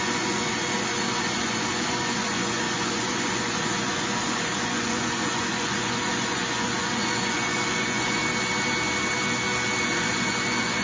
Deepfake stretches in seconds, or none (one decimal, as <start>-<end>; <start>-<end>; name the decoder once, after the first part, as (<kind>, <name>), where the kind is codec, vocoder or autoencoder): 0.0-8.2 (vocoder, Vocos); 9.8-10.8